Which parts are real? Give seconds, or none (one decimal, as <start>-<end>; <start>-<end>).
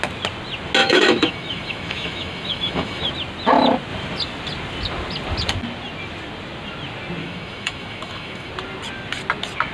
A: 0.0-0.8; 3.1-7.2; 8.5-9.7